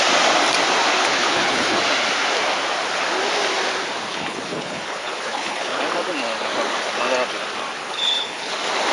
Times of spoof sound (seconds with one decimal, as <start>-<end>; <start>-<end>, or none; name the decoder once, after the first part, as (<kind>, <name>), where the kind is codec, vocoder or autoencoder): 1.0-1.8 (codec, HILCodec); 4.1-5.8; 7.8-8.5